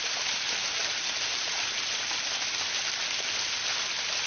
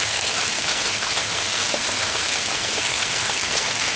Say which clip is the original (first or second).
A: first